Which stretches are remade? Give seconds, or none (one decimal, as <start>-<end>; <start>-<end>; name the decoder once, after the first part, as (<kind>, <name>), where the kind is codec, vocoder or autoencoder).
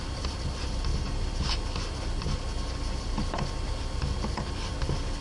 none